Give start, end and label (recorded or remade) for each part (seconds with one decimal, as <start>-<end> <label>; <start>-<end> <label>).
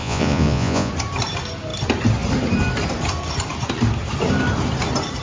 0.0-0.9 remade; 0.9-5.2 recorded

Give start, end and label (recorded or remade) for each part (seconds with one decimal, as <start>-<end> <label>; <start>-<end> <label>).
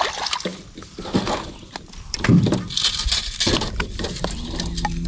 0.0-5.1 recorded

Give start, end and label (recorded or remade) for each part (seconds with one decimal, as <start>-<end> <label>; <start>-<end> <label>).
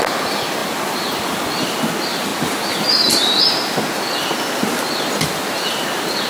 0.0-6.3 recorded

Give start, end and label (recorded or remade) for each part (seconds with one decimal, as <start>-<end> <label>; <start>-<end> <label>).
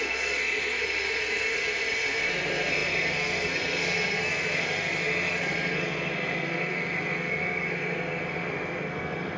0.0-9.4 remade